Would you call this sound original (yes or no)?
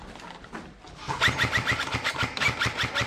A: yes